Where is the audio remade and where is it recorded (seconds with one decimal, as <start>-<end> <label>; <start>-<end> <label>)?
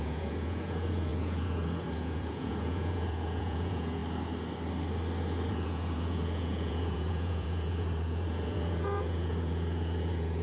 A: 0.0-4.0 remade; 4.0-5.5 recorded; 5.5-10.4 remade